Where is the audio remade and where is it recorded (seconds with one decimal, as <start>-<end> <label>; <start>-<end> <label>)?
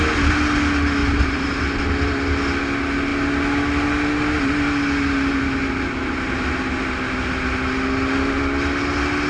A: 0.0-1.0 recorded; 1.0-1.5 remade; 1.5-9.3 recorded